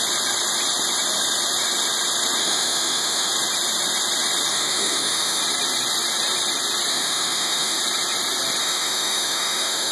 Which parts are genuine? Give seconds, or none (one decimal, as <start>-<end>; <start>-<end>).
0.0-2.4; 3.3-4.5; 5.4-6.9; 7.8-8.6

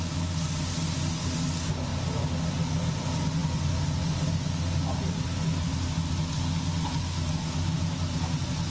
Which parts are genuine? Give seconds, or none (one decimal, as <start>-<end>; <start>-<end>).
0.0-8.7

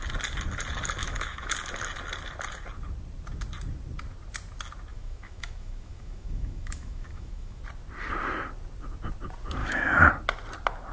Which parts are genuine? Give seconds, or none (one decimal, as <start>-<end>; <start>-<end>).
0.0-1.0; 1.5-4.9; 7.6-9.6; 10.1-10.9

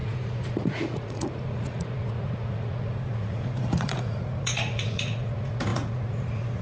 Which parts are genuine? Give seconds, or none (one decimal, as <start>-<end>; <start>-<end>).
none

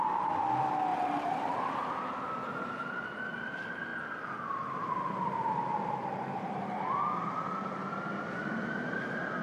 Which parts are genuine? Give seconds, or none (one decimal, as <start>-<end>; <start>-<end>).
0.0-0.9; 3.3-3.9; 7.3-9.4

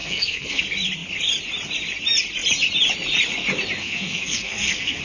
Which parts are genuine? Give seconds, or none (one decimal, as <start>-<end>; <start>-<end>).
0.6-3.8

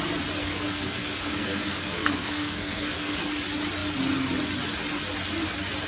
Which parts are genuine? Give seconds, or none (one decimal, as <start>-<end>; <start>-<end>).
0.0-0.4; 3.2-5.9

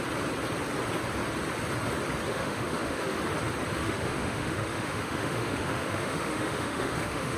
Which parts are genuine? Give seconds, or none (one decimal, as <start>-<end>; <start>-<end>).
0.0-2.3; 3.2-3.7